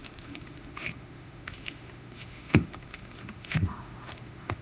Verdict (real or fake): fake